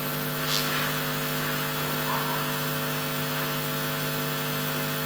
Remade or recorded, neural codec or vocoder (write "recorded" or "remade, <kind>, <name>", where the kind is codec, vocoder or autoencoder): recorded